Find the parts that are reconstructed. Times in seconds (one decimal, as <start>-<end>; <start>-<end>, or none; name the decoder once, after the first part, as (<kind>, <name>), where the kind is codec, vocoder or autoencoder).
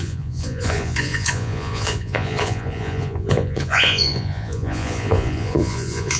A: 0.0-6.2 (vocoder, Vocos)